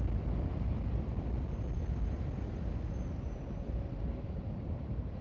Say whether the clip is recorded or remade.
recorded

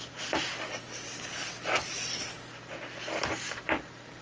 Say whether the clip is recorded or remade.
recorded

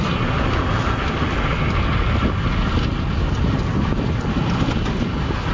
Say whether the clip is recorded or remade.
recorded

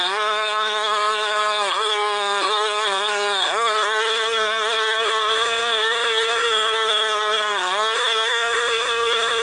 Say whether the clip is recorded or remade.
remade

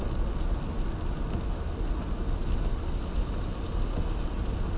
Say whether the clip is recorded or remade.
recorded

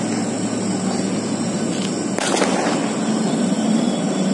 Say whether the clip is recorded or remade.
recorded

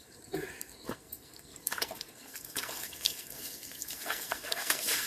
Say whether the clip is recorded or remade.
remade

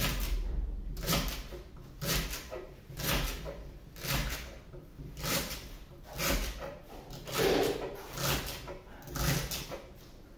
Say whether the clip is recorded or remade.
recorded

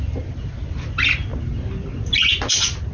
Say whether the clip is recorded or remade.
recorded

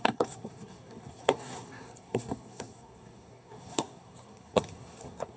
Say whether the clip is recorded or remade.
remade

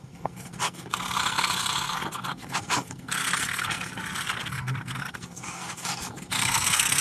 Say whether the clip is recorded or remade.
remade